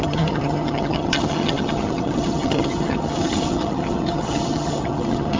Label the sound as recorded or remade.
remade